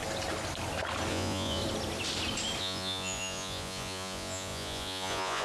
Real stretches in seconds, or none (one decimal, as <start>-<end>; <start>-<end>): 0.0-1.1; 1.6-2.6